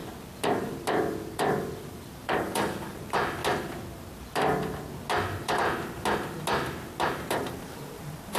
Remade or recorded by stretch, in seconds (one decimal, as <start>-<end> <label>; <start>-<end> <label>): 0.0-1.8 recorded; 1.8-3.4 remade; 3.4-7.1 recorded; 7.1-8.4 remade